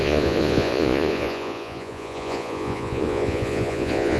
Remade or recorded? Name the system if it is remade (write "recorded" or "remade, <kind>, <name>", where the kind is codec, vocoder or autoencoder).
remade, vocoder, Vocos